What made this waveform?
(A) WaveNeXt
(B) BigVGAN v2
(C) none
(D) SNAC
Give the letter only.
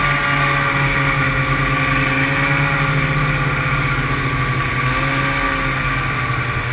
C